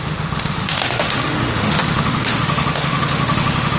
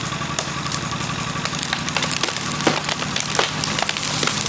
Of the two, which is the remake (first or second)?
first